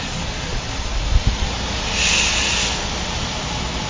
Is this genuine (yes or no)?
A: yes